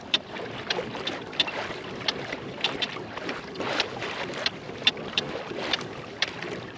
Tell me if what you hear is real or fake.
fake